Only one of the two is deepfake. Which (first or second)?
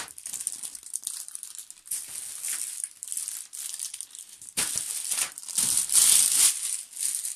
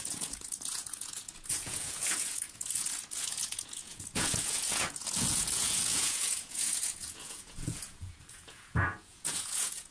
second